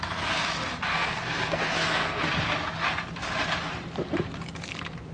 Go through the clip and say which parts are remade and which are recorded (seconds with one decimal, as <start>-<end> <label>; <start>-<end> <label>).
0.0-0.9 recorded; 0.9-2.3 remade; 2.3-5.1 recorded